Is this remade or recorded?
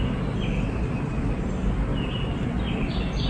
recorded